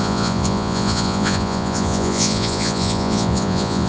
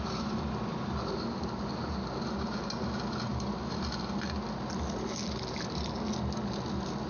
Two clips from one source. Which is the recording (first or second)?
second